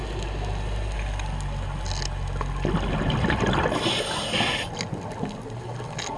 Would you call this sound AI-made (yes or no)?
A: no